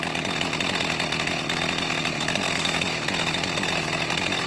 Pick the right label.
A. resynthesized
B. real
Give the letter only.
B